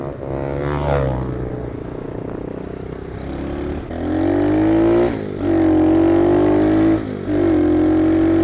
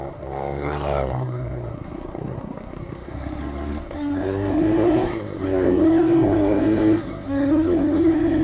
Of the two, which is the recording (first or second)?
first